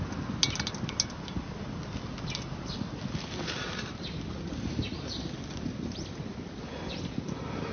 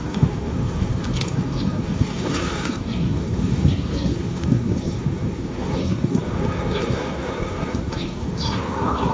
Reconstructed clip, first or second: second